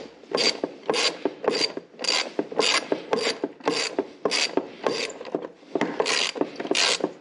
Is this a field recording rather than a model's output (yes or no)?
yes